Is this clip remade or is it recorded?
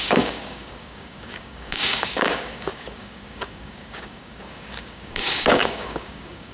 remade